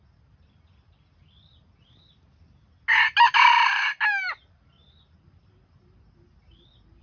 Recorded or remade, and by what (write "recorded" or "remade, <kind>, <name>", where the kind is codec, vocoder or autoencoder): recorded